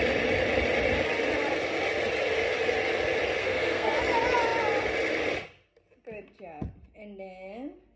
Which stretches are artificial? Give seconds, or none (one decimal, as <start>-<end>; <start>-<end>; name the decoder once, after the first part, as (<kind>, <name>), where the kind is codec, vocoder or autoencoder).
3.4-4.0 (codec, SNAC)